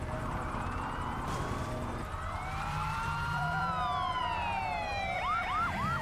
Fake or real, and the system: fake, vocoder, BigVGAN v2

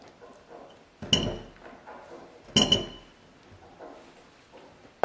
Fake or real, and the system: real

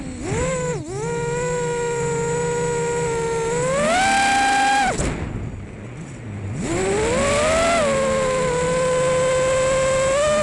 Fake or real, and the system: real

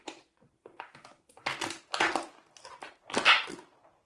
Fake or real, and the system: real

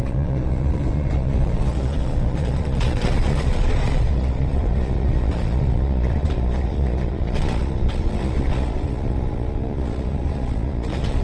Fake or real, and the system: fake, vocoder, Vocos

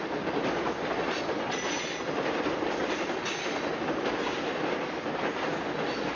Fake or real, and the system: real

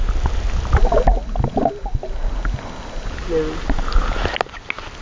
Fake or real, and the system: real